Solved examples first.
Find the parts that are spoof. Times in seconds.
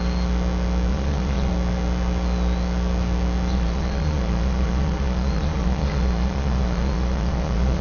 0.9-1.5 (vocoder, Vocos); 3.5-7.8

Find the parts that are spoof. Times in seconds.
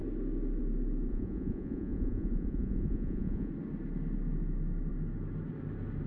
1.1-3.5 (vocoder, Vocos)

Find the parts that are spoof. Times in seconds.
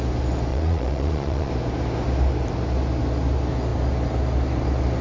0.5-1.5 (vocoder, Vocos)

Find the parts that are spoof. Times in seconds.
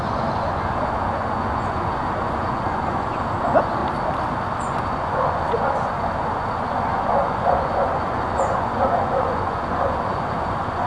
0.0-3.8 (vocoder, Vocos); 4.6-10.9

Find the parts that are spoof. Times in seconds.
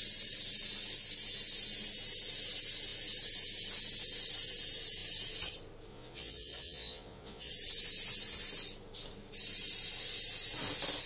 5.9-7.5 (vocoder, Vocos)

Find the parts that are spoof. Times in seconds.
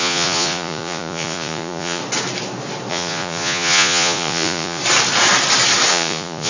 0.0-2.0 (vocoder, Vocos); 2.9-4.8; 5.9-6.5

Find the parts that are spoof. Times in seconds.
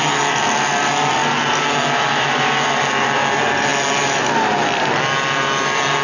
none